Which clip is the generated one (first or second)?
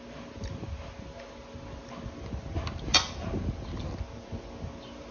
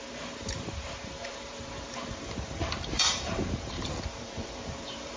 second